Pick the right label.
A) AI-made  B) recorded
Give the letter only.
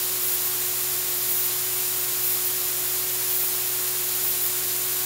B